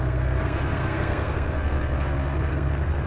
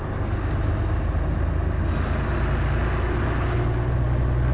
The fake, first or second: first